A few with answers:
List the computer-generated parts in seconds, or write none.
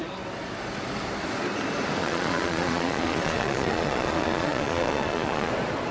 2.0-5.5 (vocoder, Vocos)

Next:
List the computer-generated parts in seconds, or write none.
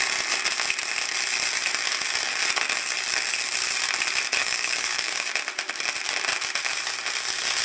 4.4-5.3 (autoencoder, DAC-VAE)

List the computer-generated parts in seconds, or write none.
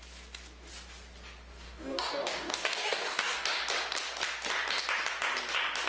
1.5-3.6 (codec, DAC)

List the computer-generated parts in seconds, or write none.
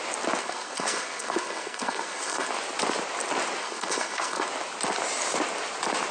0.4-2.5 (codec, SNAC); 3.6-4.5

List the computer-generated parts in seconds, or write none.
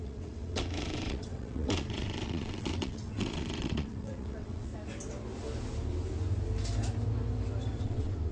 0.0-4.7 (vocoder, WaveNeXt); 7.8-8.3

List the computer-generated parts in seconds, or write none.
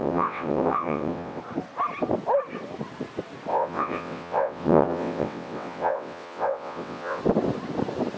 0.0-1.4 (vocoder, WaveNeXt); 3.5-7.2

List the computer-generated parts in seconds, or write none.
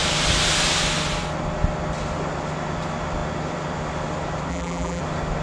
4.5-5.0 (vocoder, BigVGAN v2)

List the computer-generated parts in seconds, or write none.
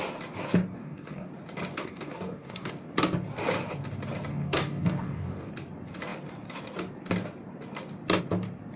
0.7-1.3 (codec, DAC); 1.8-2.7; 4.3-5.5